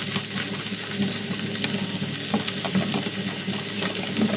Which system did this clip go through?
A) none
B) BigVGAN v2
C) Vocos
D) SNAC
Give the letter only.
A